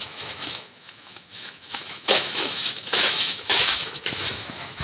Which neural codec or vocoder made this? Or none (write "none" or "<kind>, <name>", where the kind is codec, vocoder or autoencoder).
autoencoder, DAC-VAE